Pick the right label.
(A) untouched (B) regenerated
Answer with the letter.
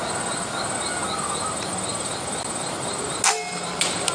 A